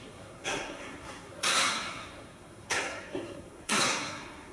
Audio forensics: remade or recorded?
remade